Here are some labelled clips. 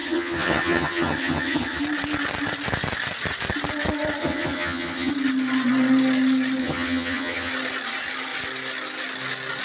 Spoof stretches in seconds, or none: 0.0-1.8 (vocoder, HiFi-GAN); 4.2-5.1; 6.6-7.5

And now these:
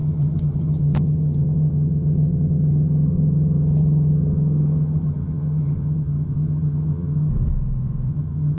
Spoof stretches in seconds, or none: 0.0-7.3 (vocoder, HiFi-GAN); 8.1-8.6

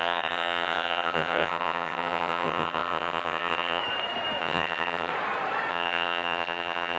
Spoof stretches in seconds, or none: 0.0-3.8 (vocoder, HiFi-GAN); 4.4-5.1; 5.7-7.0

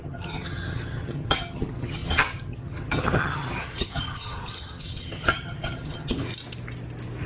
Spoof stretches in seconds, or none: 0.0-6.2 (vocoder, HiFi-GAN)